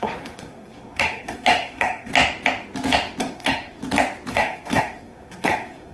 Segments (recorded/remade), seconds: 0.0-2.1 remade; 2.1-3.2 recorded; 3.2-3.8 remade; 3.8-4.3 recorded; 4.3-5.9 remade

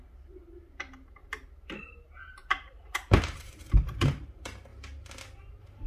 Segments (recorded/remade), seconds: 0.0-1.2 remade; 1.2-2.0 recorded; 2.0-4.7 remade; 4.7-5.5 recorded; 5.5-5.9 remade

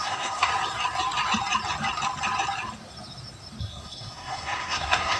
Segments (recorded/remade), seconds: 0.0-0.5 remade; 0.5-3.6 recorded; 3.6-5.2 remade